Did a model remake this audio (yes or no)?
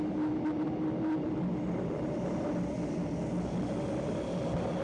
no